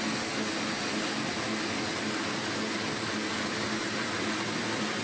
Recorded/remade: recorded